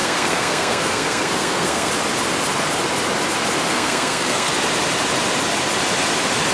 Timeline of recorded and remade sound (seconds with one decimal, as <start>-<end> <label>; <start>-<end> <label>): 0.0-1.9 remade; 1.9-3.7 recorded; 3.7-4.5 remade; 4.5-6.5 recorded